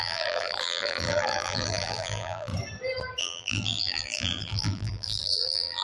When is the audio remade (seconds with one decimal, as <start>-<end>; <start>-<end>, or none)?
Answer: 0.0-2.5; 3.2-5.8